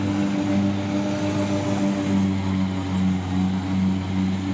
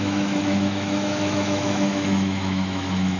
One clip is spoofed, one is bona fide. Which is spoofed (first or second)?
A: second